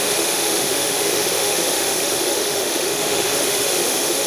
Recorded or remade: remade